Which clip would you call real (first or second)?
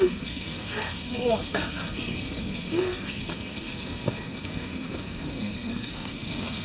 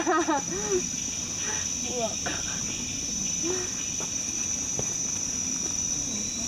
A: second